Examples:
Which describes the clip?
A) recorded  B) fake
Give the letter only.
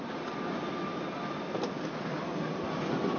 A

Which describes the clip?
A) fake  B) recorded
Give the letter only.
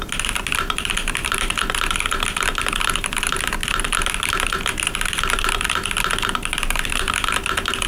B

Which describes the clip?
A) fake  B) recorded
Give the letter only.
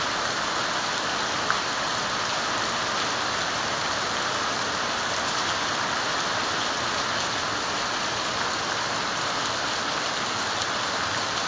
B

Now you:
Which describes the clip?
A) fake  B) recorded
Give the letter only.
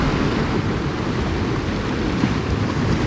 B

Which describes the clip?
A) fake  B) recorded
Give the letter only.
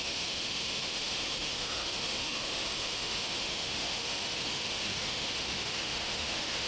A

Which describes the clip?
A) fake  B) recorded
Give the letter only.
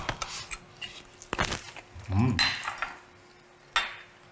B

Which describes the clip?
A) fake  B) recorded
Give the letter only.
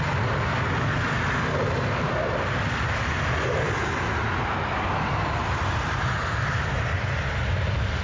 B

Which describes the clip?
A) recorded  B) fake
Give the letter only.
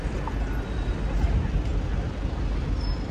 A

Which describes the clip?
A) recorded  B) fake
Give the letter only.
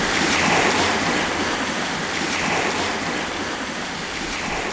A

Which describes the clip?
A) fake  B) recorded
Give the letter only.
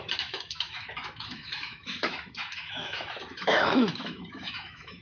A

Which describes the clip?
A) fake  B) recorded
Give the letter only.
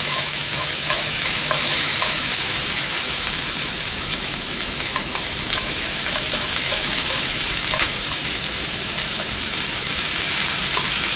A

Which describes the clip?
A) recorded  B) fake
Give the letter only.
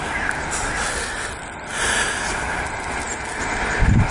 A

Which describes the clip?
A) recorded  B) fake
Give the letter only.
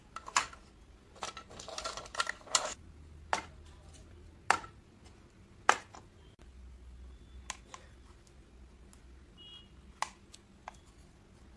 A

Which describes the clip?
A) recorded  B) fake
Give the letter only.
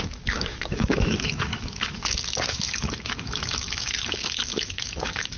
B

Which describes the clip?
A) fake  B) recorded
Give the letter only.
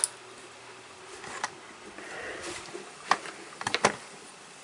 B